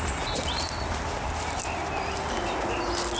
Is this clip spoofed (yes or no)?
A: no